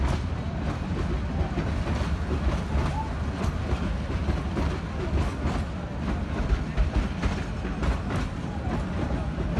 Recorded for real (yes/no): yes